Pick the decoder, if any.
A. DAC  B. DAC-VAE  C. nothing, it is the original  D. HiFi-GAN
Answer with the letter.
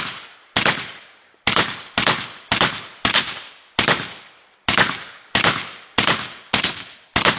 C